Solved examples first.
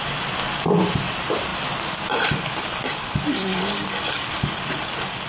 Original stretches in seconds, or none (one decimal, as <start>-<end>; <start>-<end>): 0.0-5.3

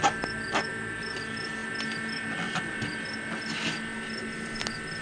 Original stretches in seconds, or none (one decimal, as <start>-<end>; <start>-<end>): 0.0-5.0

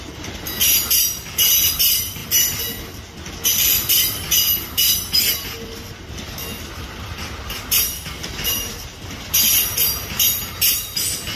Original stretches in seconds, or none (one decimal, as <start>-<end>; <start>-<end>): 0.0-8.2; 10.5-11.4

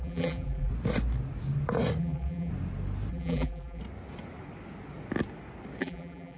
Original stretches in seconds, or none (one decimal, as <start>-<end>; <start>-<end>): 0.7-2.0; 2.5-3.1; 3.8-5.8

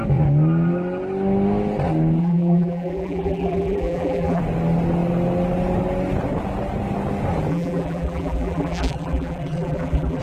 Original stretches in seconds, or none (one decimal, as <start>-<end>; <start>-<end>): 0.0-2.2; 4.4-7.5

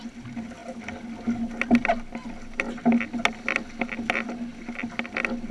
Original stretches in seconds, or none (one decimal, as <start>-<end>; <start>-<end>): 0.0-5.5

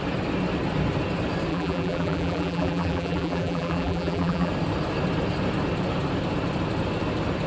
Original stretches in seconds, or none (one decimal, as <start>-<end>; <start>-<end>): 0.0-1.5; 4.5-7.5